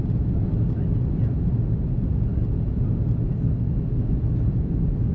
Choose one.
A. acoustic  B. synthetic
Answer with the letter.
A